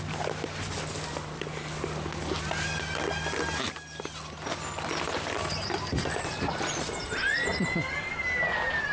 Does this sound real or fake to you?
real